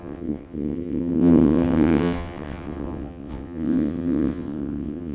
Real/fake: fake